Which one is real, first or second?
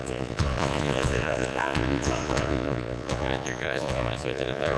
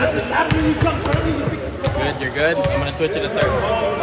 second